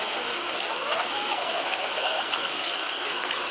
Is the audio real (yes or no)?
no